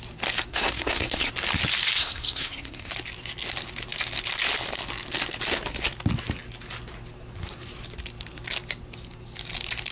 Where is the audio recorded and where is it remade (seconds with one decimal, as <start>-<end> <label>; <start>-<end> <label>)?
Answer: 0.0-0.5 recorded; 0.5-1.3 remade; 1.3-2.0 recorded; 2.0-2.9 remade; 2.9-9.9 recorded